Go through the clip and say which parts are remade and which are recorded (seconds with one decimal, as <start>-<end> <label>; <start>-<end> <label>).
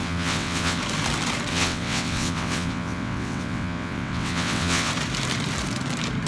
0.0-0.8 remade; 0.8-1.5 recorded; 1.5-4.9 remade; 4.9-6.3 recorded